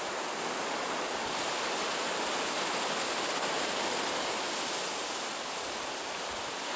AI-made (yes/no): no